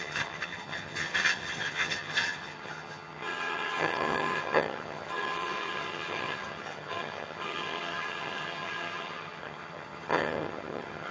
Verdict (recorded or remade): remade